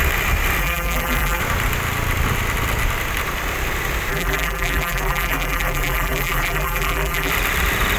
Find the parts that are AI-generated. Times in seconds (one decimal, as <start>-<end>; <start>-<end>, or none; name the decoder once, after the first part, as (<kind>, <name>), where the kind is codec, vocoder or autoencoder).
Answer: 0.6-1.4 (vocoder, BigVGAN v2); 4.1-7.3